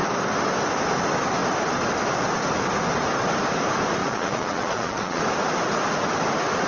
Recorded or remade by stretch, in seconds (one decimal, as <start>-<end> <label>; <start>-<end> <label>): 0.0-4.0 recorded; 4.0-5.2 remade; 5.2-6.7 recorded